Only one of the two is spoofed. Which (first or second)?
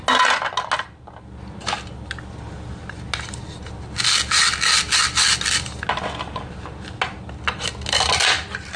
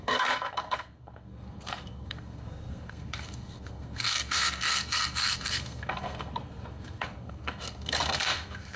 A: second